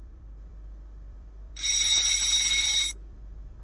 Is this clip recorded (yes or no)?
no